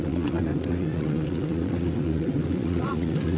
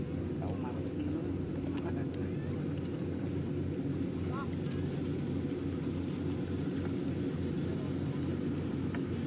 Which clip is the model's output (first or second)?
first